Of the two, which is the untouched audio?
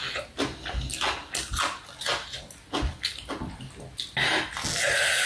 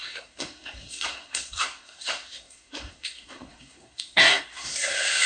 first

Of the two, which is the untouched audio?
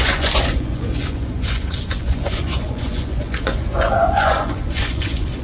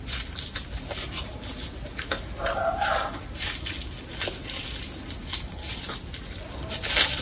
second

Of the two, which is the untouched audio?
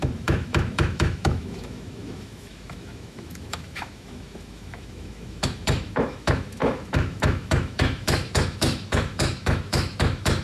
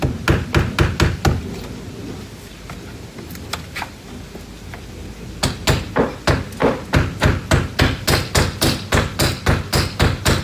second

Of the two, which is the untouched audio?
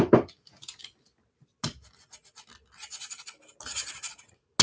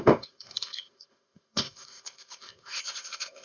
first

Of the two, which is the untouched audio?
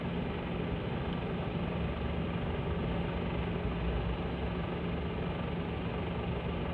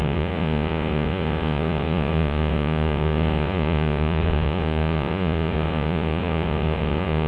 first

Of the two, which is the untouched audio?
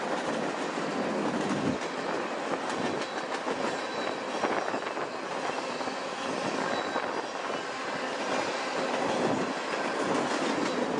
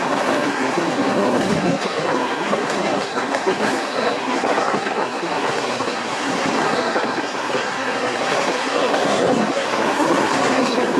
first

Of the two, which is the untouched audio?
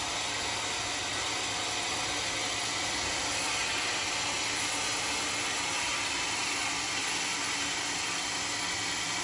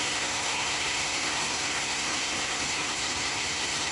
first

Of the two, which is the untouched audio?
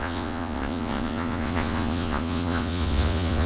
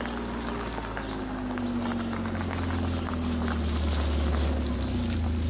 second